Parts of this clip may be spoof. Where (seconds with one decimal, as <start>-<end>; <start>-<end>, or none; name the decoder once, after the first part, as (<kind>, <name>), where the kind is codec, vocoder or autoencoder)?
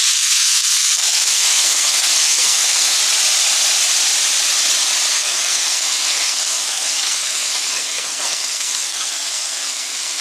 0.0-3.0 (codec, SNAC); 5.1-10.2